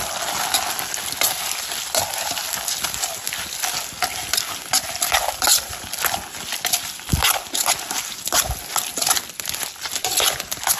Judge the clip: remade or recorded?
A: recorded